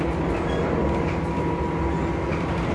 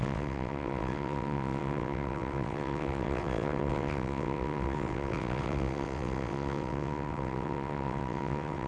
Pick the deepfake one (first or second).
second